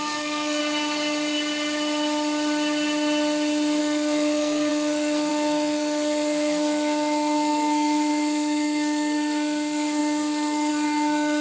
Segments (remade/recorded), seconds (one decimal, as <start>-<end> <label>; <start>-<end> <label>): 0.0-0.6 remade; 0.6-3.8 recorded; 3.8-11.4 remade

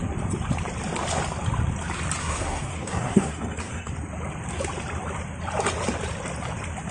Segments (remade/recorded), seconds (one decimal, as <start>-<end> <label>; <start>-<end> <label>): 0.0-2.2 recorded; 2.2-3.9 remade; 3.9-6.9 recorded